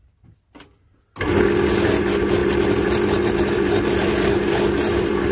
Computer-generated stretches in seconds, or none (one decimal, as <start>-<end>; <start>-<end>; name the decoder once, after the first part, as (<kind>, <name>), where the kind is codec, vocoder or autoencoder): 2.4-5.3 (vocoder, BigVGAN v2)